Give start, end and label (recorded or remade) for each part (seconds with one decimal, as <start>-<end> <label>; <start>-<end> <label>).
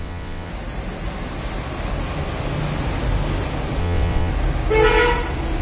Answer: 0.0-0.5 remade; 0.5-3.8 recorded; 3.8-4.3 remade; 4.3-5.6 recorded